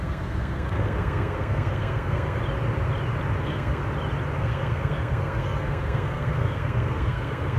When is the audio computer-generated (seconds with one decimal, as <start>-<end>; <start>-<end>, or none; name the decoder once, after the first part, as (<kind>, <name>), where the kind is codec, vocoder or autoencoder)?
0.0-2.4 (codec, SNAC); 3.4-3.8; 4.4-7.6